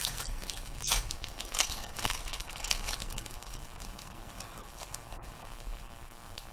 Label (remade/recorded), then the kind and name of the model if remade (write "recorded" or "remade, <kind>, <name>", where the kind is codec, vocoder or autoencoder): remade, codec, SNAC